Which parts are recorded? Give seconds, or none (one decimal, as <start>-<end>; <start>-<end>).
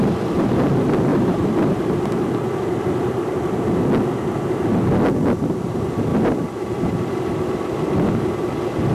0.0-1.1; 3.4-8.9